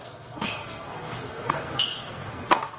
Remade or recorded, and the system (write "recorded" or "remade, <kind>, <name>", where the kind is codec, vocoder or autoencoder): remade, codec, SNAC